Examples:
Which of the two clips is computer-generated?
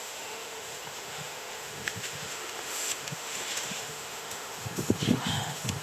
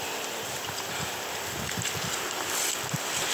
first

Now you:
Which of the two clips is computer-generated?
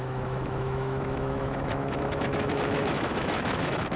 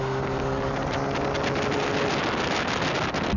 first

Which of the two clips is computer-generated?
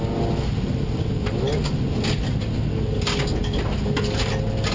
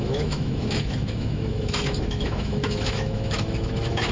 second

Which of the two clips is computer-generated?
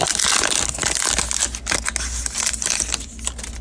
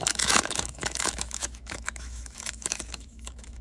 second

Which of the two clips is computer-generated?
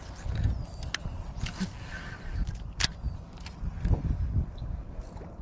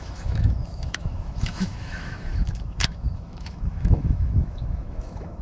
second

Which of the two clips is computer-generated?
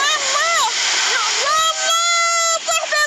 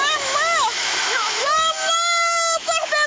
second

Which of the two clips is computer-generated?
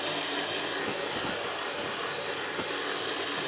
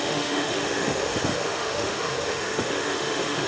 second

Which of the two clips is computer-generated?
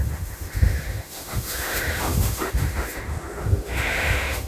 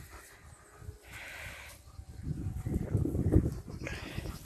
first